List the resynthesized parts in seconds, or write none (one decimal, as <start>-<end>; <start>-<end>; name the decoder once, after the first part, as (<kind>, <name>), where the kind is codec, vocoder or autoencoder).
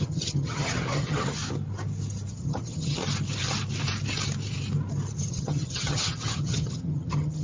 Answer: 0.0-1.4 (vocoder, HiFi-GAN); 2.3-3.0; 5.3-7.4